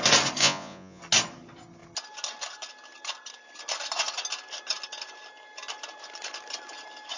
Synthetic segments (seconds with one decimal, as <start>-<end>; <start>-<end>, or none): 0.4-1.0